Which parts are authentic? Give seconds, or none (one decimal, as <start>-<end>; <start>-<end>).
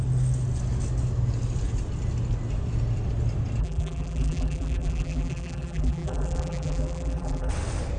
0.0-3.6; 7.5-8.0